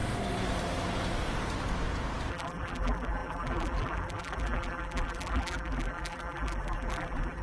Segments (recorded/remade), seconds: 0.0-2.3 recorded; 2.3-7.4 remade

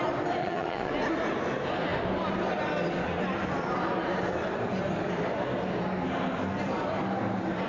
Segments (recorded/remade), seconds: 0.0-0.4 recorded; 0.4-0.9 remade; 0.9-7.7 recorded

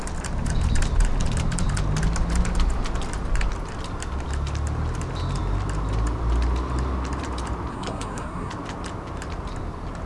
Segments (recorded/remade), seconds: 0.0-7.7 recorded; 7.7-8.5 remade; 8.5-10.1 recorded